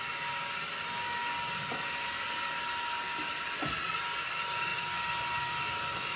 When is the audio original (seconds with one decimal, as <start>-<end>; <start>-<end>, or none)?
0.0-6.2